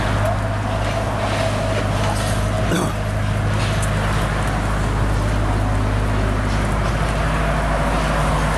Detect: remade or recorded recorded